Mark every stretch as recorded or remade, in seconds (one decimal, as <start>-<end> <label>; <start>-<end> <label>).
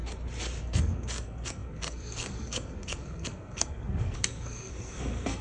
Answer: 0.0-0.6 recorded; 0.6-5.4 remade